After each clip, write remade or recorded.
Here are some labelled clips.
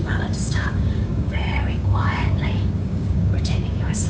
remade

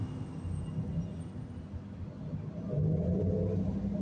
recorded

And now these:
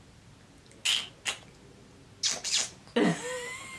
recorded